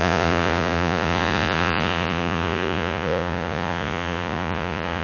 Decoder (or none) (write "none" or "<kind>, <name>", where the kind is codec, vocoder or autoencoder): vocoder, Vocos